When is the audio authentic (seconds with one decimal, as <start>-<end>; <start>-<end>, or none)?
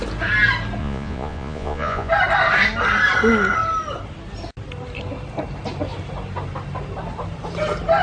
0.0-0.8; 2.1-8.0